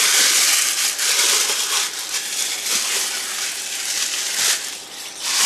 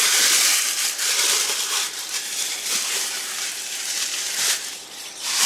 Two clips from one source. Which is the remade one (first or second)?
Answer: second